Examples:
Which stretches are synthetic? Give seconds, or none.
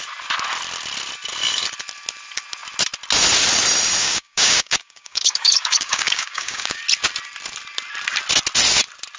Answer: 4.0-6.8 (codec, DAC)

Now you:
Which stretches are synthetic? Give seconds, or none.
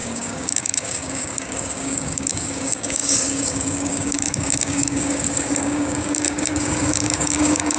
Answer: 0.0-7.8 (codec, DAC)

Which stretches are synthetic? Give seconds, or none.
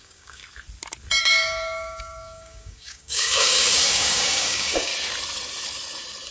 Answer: 0.0-0.4 (codec, DAC); 1.2-4.9